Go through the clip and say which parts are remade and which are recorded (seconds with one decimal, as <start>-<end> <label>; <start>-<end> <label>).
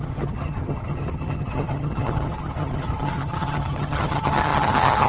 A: 0.0-5.1 remade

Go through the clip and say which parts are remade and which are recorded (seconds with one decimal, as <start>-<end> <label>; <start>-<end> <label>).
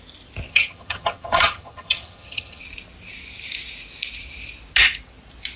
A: 0.0-0.5 recorded; 0.5-2.6 remade; 2.6-5.6 recorded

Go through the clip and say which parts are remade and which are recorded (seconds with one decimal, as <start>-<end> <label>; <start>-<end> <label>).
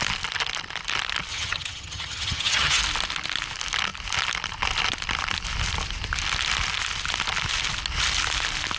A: 0.0-1.3 recorded; 1.3-2.8 remade; 2.8-8.8 recorded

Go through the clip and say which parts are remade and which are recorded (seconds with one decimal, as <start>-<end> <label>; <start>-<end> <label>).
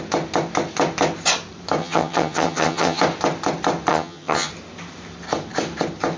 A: 0.0-1.8 recorded; 1.8-3.0 remade; 3.0-3.9 recorded; 3.9-4.5 remade; 4.5-6.2 recorded